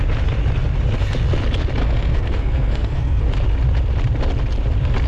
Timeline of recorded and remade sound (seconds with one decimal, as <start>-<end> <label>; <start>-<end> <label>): 0.0-1.8 recorded; 1.8-3.2 remade; 3.2-5.1 recorded